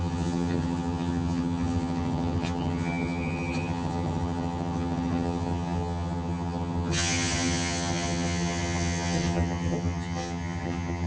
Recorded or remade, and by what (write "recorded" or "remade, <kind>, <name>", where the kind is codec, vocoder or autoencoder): remade, vocoder, HiFi-GAN